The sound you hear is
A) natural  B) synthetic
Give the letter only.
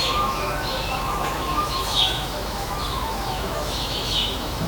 B